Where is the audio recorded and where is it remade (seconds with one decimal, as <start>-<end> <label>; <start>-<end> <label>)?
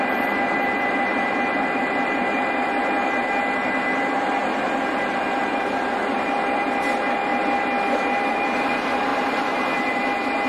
0.0-3.2 remade; 3.2-4.0 recorded; 4.0-7.3 remade; 7.3-7.9 recorded; 7.9-10.5 remade